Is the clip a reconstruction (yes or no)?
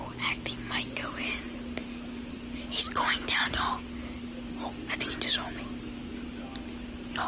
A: no